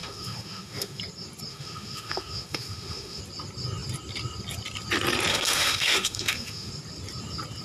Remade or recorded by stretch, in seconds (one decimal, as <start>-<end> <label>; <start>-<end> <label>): 0.0-1.0 remade; 1.0-1.5 recorded; 1.5-3.2 remade; 3.2-5.3 recorded; 5.3-6.7 remade; 6.7-7.6 recorded